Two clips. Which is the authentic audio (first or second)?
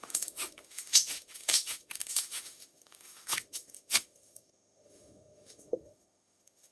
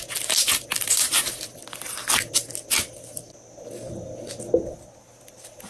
second